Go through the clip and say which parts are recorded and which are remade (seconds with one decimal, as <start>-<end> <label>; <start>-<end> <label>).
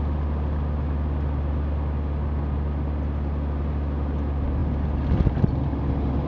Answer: 0.0-6.3 recorded